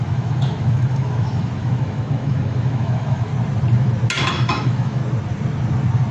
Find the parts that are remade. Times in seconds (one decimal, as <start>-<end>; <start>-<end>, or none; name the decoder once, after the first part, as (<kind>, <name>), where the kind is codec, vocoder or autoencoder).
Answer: 0.0-3.3 (autoencoder, DAC-VAE); 4.2-5.0